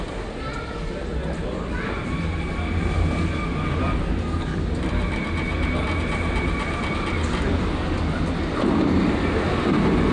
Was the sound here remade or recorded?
recorded